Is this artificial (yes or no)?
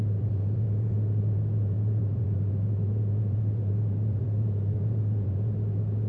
yes